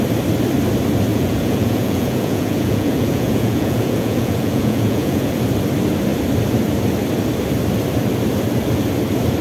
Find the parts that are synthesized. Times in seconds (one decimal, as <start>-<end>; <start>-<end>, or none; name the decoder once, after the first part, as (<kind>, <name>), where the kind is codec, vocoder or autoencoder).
1.1-5.3 (vocoder, Vocos)